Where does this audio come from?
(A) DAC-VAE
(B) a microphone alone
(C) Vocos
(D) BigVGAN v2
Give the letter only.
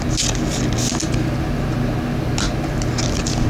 B